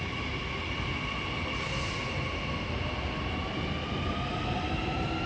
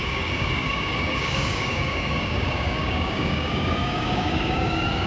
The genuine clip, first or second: first